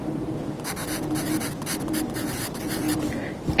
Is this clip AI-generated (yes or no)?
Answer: no